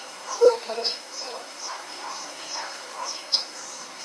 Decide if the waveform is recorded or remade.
remade